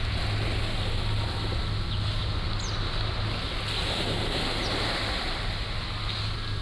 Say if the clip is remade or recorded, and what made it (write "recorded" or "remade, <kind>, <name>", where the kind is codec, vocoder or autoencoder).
recorded